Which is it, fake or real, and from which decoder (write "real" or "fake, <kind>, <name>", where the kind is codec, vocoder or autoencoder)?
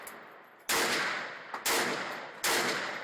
real